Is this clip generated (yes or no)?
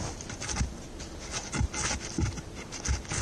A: no